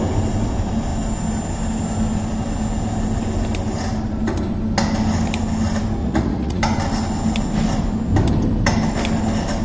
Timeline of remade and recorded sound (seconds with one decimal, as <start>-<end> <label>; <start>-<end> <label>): 0.0-6.0 recorded; 6.0-6.6 remade; 6.6-9.6 recorded